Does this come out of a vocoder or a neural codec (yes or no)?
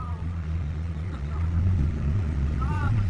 yes